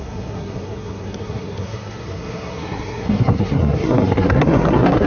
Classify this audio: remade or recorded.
remade